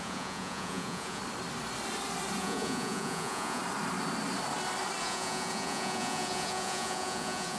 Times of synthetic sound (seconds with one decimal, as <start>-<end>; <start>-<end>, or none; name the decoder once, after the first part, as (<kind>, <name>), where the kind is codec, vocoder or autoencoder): 0.0-1.2 (vocoder, Vocos); 2.4-3.6; 5.0-7.6